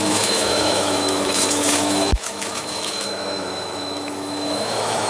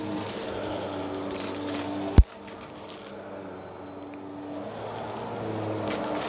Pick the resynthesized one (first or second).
first